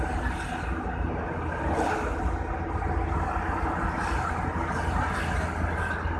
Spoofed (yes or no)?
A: no